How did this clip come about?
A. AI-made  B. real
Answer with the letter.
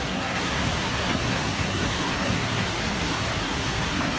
A